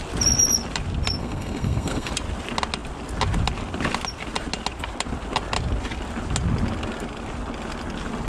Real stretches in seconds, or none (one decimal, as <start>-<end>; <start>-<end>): 0.0-1.2; 2.1-8.3